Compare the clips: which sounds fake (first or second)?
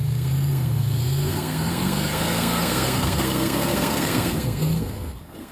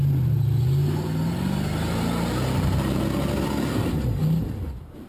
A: first